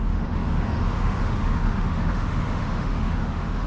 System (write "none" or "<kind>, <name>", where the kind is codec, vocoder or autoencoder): autoencoder, DAC-VAE